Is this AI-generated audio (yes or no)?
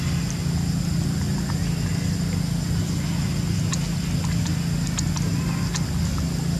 no